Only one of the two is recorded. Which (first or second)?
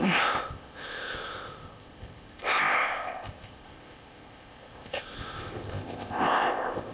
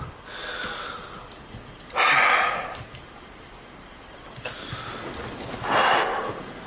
second